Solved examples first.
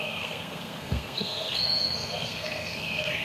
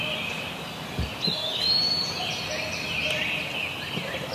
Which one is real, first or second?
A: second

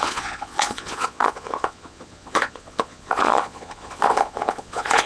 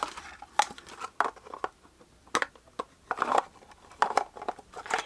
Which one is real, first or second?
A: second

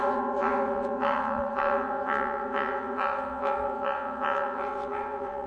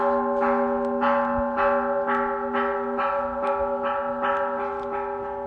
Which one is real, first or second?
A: second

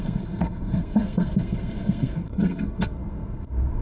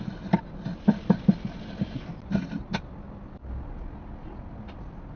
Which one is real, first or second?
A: second